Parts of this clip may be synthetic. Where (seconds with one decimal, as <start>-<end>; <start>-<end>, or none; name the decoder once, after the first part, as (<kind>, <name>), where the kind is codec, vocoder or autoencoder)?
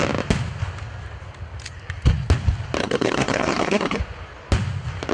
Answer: 2.8-4.0 (codec, SNAC)